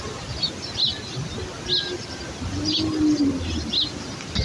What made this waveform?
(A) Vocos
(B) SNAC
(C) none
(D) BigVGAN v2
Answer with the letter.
C